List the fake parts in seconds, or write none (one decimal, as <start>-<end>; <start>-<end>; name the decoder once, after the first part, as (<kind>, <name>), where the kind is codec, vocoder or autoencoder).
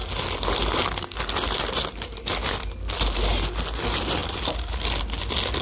none